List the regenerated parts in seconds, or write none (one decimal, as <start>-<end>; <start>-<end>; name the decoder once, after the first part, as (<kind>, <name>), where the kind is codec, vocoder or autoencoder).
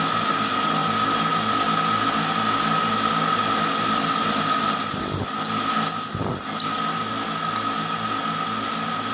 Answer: none